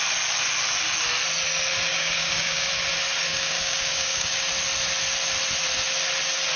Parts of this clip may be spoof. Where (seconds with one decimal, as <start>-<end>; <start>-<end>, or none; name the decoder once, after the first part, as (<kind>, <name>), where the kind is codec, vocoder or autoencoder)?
1.9-2.7 (codec, DAC); 3.3-4.5